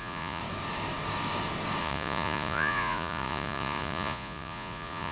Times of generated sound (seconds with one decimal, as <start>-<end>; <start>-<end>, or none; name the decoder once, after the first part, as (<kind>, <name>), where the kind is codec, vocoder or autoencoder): 0.0-0.4 (vocoder, Vocos); 1.8-5.1